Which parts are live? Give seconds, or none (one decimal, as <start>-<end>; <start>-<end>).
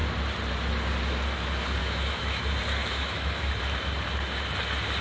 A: 0.0-1.8; 2.4-2.8; 3.5-5.0